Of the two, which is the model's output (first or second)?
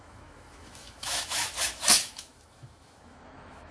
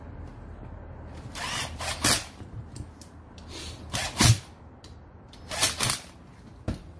first